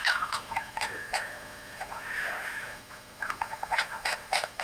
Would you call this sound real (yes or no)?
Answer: no